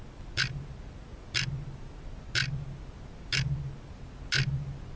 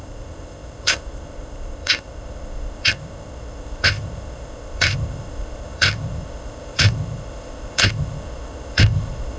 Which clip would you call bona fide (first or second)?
first